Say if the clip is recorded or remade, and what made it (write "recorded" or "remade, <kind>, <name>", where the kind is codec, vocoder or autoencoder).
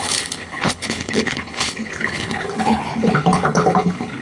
remade, codec, HILCodec